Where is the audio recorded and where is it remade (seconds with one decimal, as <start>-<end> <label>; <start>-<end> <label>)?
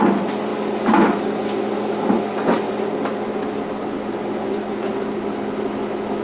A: 0.0-6.2 recorded